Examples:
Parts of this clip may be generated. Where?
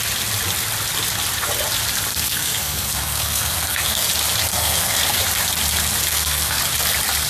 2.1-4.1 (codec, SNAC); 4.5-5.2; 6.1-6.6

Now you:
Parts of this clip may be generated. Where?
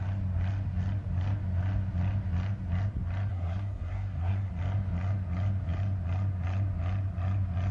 3.3-4.5 (codec, SNAC)